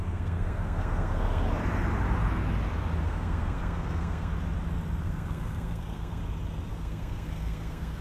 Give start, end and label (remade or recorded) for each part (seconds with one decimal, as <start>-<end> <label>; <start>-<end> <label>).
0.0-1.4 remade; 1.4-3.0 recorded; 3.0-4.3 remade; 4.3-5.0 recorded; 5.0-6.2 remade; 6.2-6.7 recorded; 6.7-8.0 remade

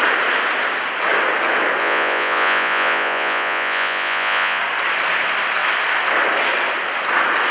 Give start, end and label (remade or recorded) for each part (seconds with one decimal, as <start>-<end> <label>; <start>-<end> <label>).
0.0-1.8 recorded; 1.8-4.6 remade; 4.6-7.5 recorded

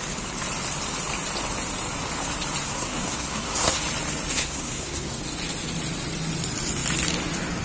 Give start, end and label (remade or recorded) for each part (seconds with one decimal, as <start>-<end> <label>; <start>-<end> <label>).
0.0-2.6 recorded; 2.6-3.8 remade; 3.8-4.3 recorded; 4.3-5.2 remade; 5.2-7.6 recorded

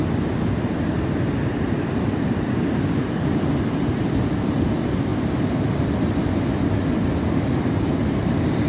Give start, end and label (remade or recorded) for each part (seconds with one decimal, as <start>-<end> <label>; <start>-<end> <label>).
0.0-8.7 recorded

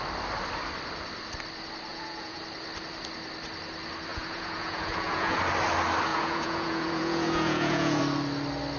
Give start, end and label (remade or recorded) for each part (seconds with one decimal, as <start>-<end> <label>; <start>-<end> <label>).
0.0-1.9 recorded; 1.9-2.4 remade; 2.4-4.1 recorded; 4.1-5.4 remade; 5.4-6.1 recorded; 6.1-8.0 remade; 8.0-8.8 recorded

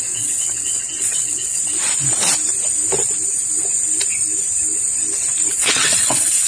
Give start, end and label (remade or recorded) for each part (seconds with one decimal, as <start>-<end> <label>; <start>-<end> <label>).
0.0-1.6 remade; 1.6-5.5 recorded; 5.5-6.5 remade

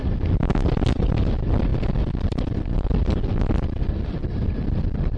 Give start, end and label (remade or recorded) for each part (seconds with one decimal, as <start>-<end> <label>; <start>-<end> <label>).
0.0-5.2 recorded

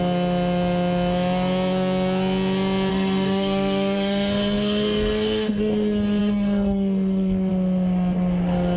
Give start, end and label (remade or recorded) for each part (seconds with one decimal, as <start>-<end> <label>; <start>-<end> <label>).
0.0-2.9 recorded; 2.9-5.6 remade; 5.6-6.2 recorded; 6.2-7.5 remade; 7.5-8.8 recorded